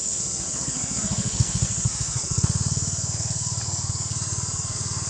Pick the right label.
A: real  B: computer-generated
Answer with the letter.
B